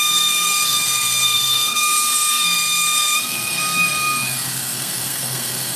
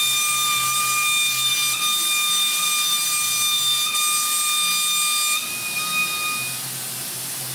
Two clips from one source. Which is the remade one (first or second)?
first